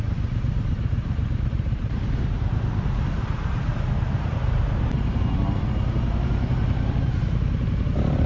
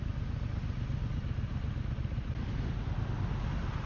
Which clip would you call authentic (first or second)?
second